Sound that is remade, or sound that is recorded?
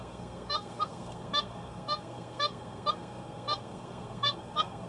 remade